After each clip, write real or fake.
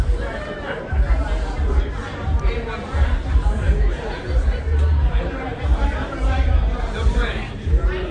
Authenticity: fake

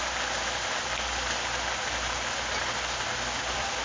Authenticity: fake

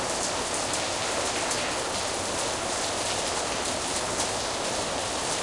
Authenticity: real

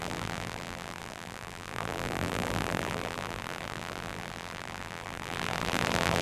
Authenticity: fake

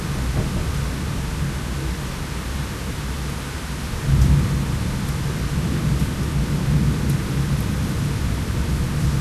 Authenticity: real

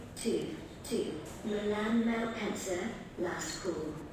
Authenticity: fake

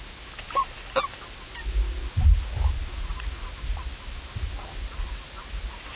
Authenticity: real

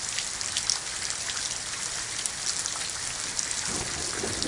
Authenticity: real